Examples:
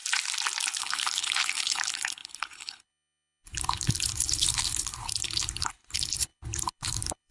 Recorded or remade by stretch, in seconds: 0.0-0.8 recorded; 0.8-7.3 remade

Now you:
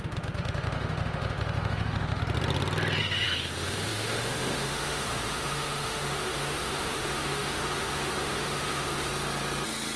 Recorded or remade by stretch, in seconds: 0.0-2.2 remade; 2.2-3.0 recorded; 3.0-9.1 remade; 9.1-10.0 recorded

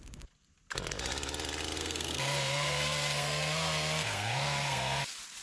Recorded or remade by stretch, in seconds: 0.0-1.8 recorded; 1.8-5.0 remade; 5.0-5.4 recorded